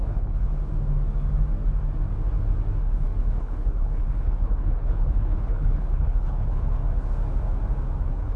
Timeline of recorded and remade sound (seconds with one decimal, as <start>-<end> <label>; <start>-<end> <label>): 0.0-0.5 remade; 0.5-2.8 recorded; 2.8-6.8 remade; 6.8-8.0 recorded; 8.0-8.4 remade